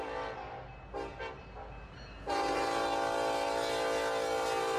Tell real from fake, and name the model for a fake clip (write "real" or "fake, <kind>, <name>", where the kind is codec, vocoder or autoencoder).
real